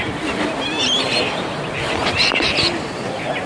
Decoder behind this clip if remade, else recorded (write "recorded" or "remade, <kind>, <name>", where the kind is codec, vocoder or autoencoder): recorded